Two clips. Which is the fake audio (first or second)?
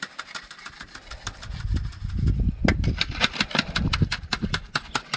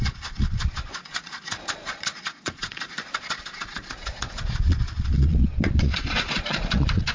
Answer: second